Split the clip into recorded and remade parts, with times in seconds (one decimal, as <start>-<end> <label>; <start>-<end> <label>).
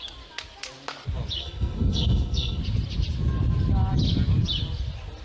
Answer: 0.0-1.4 recorded; 1.4-2.6 remade; 2.6-5.2 recorded